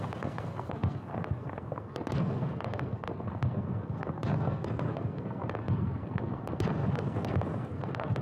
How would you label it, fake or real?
fake